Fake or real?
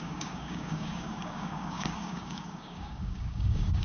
fake